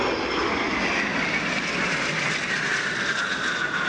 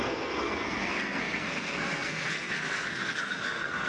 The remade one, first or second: second